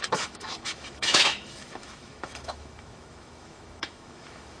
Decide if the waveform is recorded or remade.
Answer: remade